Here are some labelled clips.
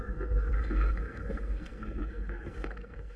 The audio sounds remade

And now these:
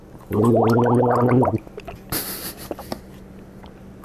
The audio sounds recorded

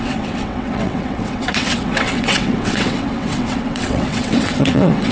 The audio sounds remade